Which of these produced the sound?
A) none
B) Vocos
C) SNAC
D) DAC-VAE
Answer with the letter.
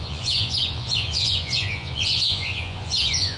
B